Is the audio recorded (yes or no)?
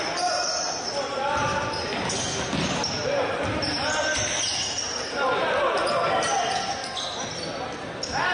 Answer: yes